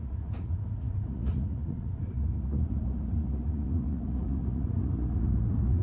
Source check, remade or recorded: remade